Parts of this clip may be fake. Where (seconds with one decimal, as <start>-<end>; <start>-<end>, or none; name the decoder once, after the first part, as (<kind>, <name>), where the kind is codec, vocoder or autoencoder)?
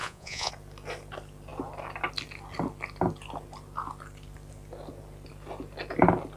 0.0-0.5 (vocoder, Vocos)